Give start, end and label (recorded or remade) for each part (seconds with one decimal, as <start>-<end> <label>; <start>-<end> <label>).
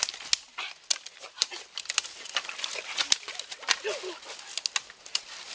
0.0-5.5 recorded